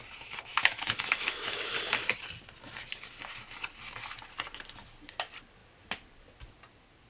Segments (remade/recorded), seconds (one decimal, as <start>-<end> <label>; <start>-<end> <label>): 0.0-0.5 recorded; 0.5-1.7 remade; 1.7-7.1 recorded